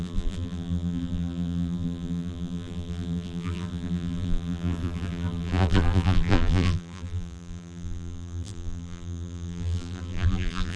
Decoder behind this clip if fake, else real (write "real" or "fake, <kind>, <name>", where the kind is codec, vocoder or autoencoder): fake, vocoder, BigVGAN v2